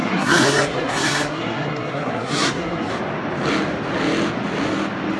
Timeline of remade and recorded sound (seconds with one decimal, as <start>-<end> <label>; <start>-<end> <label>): 0.0-2.9 remade; 2.9-5.2 recorded